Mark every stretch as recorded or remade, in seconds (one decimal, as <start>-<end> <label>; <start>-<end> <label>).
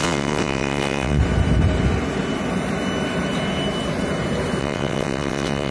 0.0-1.2 remade; 1.2-4.6 recorded; 4.6-5.7 remade